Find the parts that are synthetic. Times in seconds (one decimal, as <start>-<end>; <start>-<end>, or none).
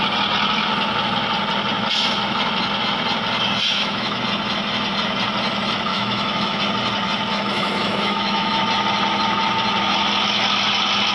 3.7-4.2; 5.9-6.6; 7.3-8.6